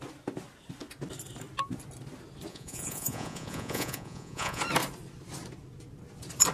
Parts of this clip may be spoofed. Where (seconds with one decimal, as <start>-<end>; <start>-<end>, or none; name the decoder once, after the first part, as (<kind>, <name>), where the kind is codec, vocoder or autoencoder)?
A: 2.5-4.6 (vocoder, Vocos)